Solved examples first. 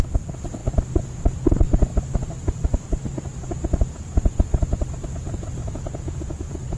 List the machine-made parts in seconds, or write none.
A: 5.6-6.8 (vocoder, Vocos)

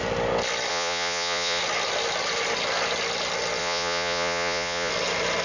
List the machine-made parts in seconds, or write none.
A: 0.7-1.6 (vocoder, Vocos); 3.6-4.9

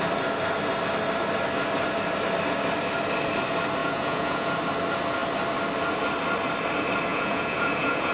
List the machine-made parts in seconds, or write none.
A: 3.8-4.6 (vocoder, Vocos); 7.1-8.1

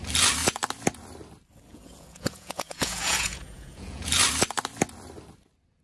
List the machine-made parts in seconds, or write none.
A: 1.7-4.1 (vocoder, Vocos)

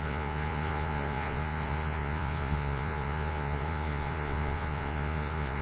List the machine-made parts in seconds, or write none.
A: 0.0-5.6 (vocoder, Vocos)

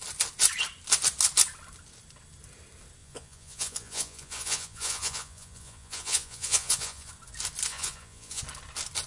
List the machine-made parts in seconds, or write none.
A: 3.0-7.1 (vocoder, Vocos); 7.7-8.4

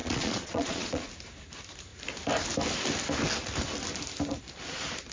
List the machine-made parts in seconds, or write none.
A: 0.0-1.1 (vocoder, Vocos)